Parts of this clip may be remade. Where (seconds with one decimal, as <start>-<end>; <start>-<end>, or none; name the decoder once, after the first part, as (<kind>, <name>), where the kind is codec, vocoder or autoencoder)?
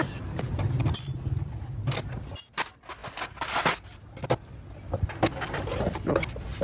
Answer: 0.0-3.0 (vocoder, BigVGAN v2); 4.0-6.6